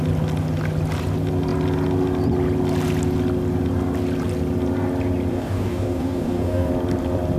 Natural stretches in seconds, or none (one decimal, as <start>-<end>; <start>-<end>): 0.0-5.3; 6.7-7.4